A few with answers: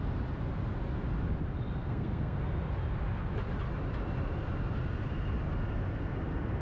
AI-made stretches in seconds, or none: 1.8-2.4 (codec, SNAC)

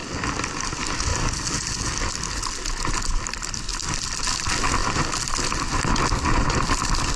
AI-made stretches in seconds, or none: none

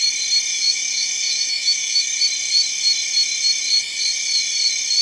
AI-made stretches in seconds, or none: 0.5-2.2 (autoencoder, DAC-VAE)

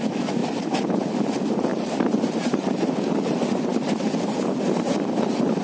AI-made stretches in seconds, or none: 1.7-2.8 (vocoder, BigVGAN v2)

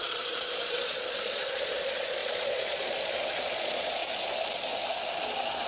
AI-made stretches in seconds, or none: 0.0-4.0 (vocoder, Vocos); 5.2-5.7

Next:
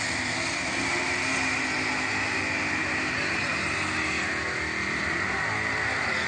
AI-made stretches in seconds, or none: none

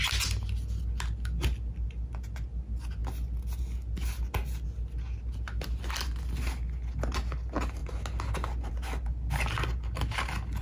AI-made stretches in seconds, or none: none

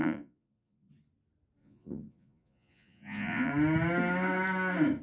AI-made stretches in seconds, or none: 0.0-0.9 (vocoder, Vocos); 1.6-3.5